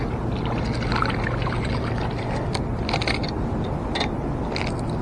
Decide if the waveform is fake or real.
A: real